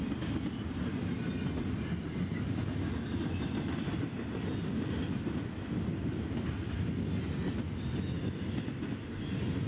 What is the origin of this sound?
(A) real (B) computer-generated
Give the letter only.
A